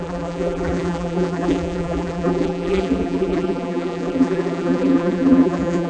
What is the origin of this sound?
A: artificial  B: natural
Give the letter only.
A